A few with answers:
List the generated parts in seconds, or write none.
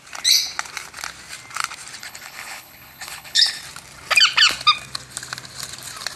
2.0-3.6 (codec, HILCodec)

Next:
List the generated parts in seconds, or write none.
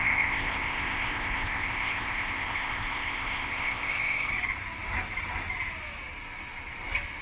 0.0-4.3 (codec, ZipCodec)